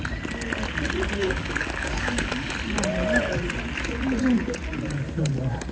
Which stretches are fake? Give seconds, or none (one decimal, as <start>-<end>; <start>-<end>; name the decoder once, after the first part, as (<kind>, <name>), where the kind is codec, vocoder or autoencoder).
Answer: 1.2-2.5 (codec, DAC)

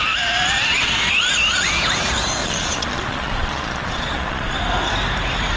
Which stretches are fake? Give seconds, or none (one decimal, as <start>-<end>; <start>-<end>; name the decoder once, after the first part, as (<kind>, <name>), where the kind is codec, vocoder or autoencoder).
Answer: 2.4-4.6 (vocoder, Vocos)

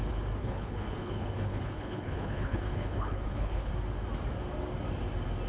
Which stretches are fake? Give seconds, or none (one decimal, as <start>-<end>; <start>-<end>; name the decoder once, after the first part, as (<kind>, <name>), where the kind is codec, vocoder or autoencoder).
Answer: 0.4-3.7 (codec, HILCodec)

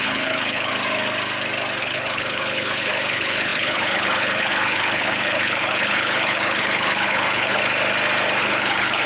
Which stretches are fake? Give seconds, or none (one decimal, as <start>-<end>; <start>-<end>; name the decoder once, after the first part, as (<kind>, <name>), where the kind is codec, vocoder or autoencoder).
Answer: 0.0-0.7 (codec, HILCodec); 1.8-7.6; 8.4-9.1

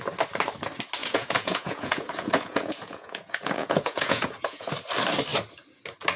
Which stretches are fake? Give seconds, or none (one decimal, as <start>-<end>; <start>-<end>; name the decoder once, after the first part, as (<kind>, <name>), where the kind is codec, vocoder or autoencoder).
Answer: 1.0-4.7 (vocoder, Vocos)